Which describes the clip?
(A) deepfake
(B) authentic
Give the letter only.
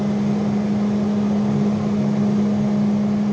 B